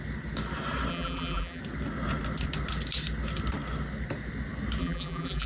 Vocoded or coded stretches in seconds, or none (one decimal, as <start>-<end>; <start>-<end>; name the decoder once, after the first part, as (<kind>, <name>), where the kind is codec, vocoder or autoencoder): 0.9-1.6 (vocoder, BigVGAN v2); 4.8-5.5